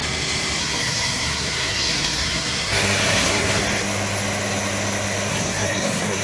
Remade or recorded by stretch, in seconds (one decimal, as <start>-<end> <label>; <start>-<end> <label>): 0.0-0.6 recorded; 0.6-3.6 remade; 3.6-5.3 recorded; 5.3-6.2 remade